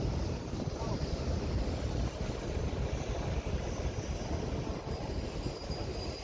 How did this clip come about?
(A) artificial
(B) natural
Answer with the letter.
B